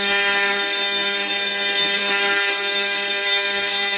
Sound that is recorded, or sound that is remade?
remade